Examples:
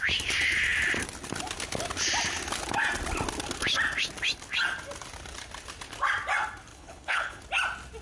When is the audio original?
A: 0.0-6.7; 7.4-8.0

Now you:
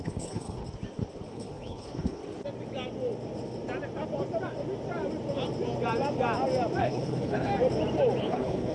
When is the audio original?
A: 0.6-1.3; 2.2-6.8; 7.5-8.2

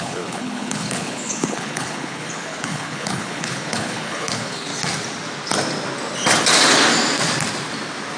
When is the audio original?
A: 4.7-8.2

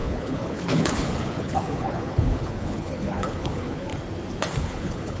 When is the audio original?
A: 3.9-4.6

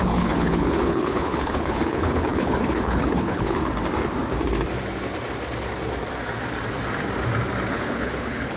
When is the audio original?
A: 3.6-7.7

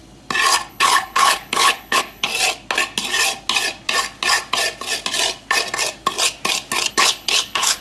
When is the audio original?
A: 0.0-0.7; 2.3-6.9